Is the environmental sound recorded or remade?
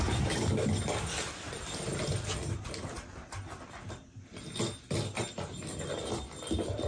recorded